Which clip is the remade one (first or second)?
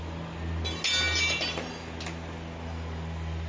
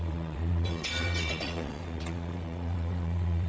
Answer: second